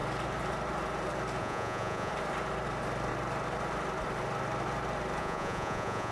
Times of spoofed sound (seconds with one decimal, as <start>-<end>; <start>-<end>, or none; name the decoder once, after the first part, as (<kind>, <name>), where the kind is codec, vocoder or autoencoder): 1.4-2.1 (vocoder, Vocos); 5.2-6.1

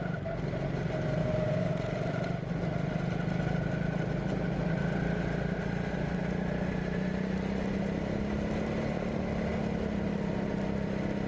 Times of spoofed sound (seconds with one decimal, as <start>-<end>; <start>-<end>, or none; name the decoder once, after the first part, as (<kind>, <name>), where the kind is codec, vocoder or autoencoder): 1.2-1.7 (codec, DAC)

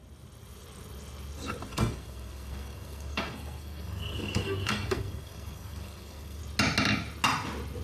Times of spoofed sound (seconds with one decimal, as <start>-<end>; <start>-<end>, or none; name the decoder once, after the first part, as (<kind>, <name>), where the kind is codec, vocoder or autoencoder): 1.7-6.4 (codec, SNAC)

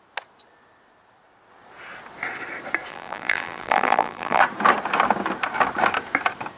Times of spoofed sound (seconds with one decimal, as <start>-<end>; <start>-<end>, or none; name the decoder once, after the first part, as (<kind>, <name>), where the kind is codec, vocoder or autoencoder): 2.9-4.4 (vocoder, BigVGAN v2)

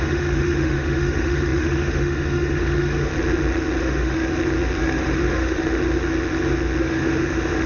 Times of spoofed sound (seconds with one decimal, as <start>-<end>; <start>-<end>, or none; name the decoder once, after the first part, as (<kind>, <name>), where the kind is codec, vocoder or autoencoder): 0.0-3.1 (autoencoder, DAC-VAE); 3.8-4.3; 4.8-5.8; 6.8-7.7

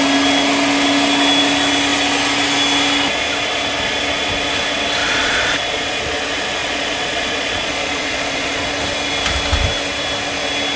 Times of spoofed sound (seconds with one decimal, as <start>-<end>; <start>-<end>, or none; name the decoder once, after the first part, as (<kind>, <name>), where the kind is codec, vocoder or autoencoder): 5.0-5.9 (vocoder, Vocos); 6.6-8.7